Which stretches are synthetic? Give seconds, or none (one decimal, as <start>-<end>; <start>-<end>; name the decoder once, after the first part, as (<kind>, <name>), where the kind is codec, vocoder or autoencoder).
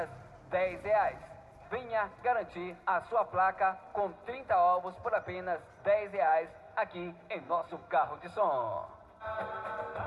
6.3-8.9 (autoencoder, DAC-VAE)